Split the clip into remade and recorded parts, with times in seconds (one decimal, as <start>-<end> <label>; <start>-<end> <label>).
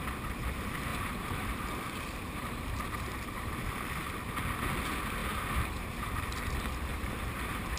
0.0-0.9 recorded; 0.9-3.9 remade; 3.9-5.2 recorded; 5.2-6.3 remade; 6.3-6.9 recorded; 6.9-7.8 remade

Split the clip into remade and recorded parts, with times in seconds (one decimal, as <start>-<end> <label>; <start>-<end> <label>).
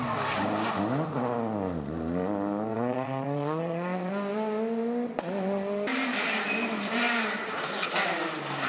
0.0-2.7 recorded; 2.7-4.1 remade; 4.1-8.7 recorded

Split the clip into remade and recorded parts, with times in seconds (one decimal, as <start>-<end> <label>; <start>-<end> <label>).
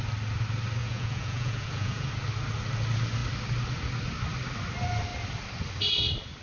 0.0-0.8 recorded; 0.8-2.1 remade; 2.1-6.4 recorded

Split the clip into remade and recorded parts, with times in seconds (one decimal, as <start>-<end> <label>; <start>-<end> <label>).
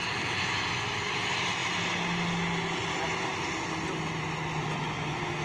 0.0-5.4 recorded